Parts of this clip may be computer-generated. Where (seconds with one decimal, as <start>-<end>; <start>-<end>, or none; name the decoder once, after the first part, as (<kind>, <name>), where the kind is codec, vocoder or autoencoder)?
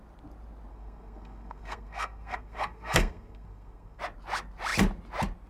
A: 0.7-4.0 (codec, SNAC)